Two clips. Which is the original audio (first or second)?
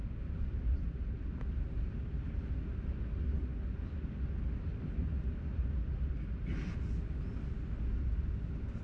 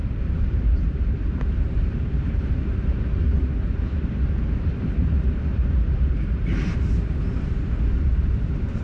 first